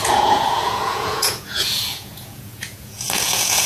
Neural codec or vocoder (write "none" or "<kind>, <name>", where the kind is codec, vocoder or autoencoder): vocoder, Vocos